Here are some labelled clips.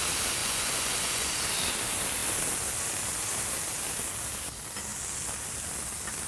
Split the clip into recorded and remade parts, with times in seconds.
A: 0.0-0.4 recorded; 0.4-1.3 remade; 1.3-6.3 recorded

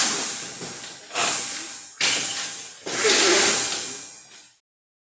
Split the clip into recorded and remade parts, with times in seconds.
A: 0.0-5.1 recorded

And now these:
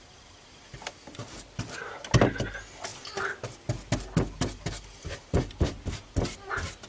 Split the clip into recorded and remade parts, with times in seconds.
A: 0.0-6.9 recorded

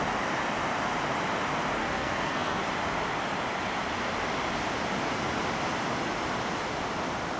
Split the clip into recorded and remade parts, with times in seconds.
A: 0.0-1.8 recorded; 1.8-2.6 remade; 2.6-7.4 recorded

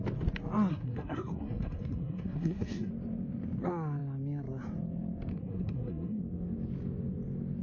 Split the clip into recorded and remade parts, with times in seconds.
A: 0.0-0.7 recorded; 0.7-2.9 remade; 2.9-5.3 recorded; 5.3-6.2 remade; 6.2-7.6 recorded